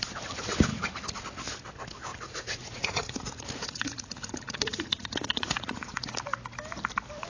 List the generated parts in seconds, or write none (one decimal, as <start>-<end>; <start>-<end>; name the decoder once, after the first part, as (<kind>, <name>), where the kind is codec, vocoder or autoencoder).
0.7-1.2 (vocoder, Vocos); 2.1-6.1